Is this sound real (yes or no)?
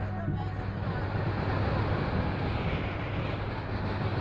yes